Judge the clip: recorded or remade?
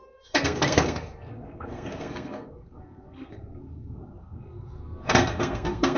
remade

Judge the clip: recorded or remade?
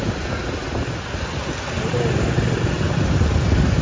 recorded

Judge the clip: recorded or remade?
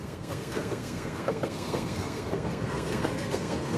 remade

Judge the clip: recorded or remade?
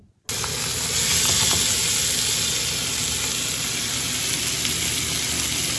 recorded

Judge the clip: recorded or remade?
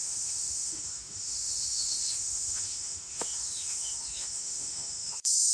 remade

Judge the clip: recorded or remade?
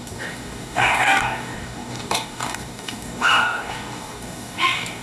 remade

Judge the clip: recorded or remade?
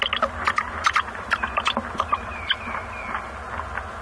recorded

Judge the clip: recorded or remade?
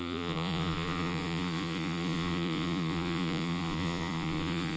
remade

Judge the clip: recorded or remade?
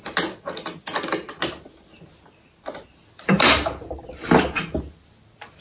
recorded